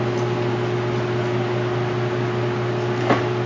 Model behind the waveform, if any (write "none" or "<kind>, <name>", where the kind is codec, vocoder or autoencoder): none